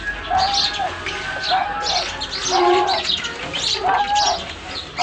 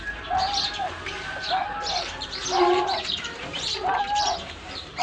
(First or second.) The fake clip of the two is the second